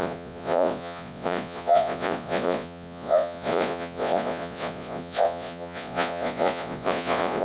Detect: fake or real fake